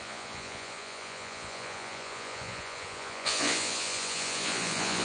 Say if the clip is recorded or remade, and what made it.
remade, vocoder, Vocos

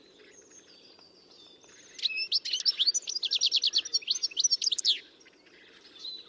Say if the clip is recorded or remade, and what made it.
recorded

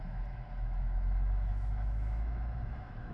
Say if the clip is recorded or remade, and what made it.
remade, autoencoder, DAC-VAE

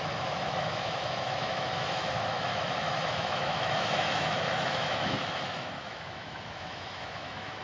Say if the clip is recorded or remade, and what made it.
remade, autoencoder, DAC-VAE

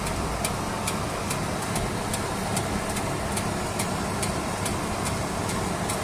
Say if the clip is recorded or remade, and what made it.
remade, vocoder, BigVGAN v2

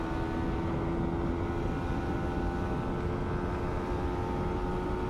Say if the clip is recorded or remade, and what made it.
recorded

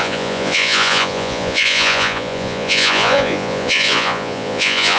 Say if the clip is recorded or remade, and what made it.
remade, vocoder, Vocos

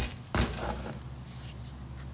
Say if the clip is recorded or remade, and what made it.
recorded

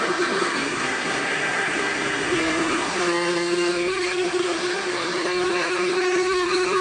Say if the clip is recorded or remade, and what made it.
remade, codec, SNAC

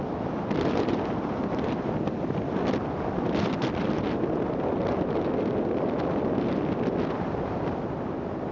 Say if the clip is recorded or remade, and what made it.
recorded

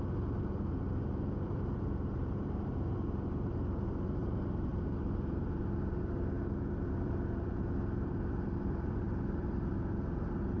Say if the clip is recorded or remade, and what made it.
remade, vocoder, BigVGAN v2